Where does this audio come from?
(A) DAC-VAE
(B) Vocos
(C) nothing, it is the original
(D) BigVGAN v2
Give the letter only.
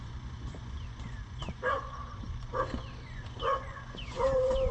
B